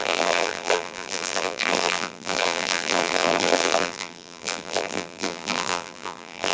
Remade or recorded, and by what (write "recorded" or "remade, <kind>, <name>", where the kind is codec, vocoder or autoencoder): remade, vocoder, BigVGAN v2